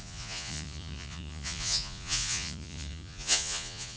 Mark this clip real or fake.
fake